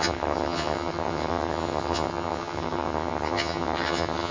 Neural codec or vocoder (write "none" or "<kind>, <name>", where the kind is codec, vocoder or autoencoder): vocoder, HiFi-GAN